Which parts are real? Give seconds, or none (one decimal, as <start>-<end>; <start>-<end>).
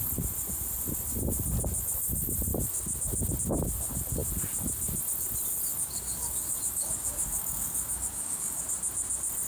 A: 0.0-5.7; 8.6-9.5